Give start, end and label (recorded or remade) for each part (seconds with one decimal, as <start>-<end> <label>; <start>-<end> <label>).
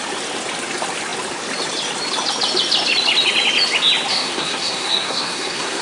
0.0-4.1 recorded; 4.1-5.8 remade